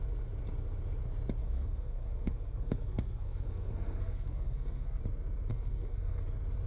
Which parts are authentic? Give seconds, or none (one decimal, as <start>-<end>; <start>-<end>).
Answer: 0.0-1.4; 5.0-5.5; 6.2-6.7